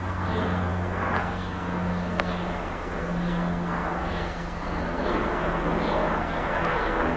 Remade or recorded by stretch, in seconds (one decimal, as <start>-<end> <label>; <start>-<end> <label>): 0.0-7.2 remade

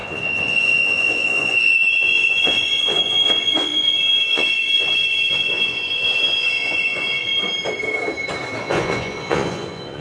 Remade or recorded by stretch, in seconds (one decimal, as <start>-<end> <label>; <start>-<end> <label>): 0.0-7.3 remade; 7.3-8.6 recorded; 8.6-10.0 remade

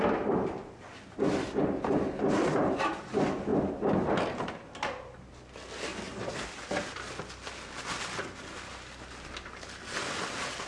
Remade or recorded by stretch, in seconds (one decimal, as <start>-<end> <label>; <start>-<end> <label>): 0.0-10.7 recorded

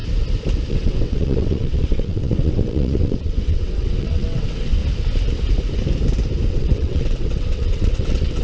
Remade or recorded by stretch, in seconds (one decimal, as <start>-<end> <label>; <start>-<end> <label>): 0.0-0.7 recorded; 0.7-4.8 remade; 4.8-6.5 recorded; 6.5-8.4 remade